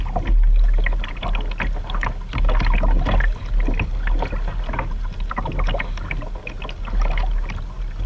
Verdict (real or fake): real